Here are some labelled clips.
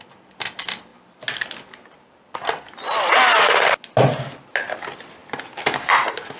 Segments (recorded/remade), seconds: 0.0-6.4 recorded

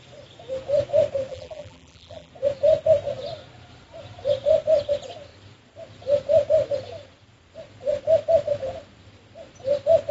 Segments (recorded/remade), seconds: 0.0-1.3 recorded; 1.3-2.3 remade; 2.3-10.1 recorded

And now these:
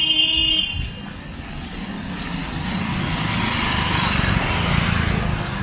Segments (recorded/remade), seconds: 0.0-5.6 recorded